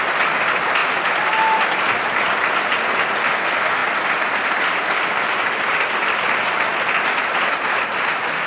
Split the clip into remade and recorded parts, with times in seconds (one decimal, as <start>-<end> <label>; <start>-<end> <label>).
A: 0.0-3.8 recorded; 3.8-4.5 remade; 4.5-6.7 recorded; 6.7-7.5 remade; 7.5-8.5 recorded